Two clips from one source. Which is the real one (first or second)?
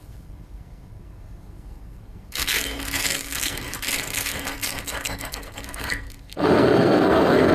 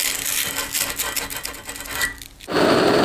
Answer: second